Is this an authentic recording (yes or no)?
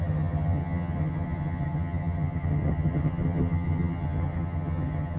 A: no